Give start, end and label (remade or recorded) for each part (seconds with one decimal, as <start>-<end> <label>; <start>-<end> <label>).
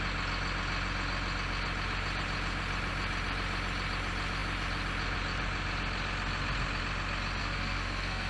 0.0-7.4 recorded; 7.4-8.3 remade